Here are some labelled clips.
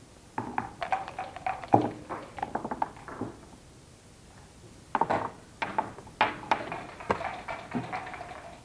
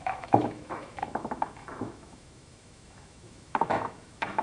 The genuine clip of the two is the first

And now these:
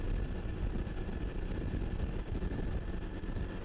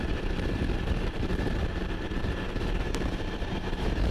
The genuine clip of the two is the first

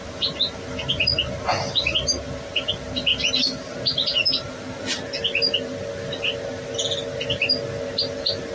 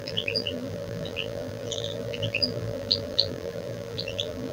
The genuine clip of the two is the first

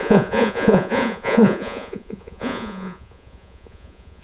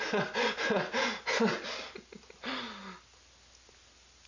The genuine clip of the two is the second